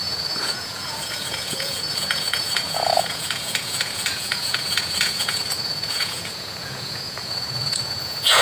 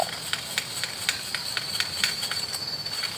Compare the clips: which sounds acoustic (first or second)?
second